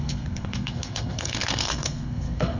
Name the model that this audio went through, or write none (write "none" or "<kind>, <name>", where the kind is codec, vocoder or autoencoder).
codec, SNAC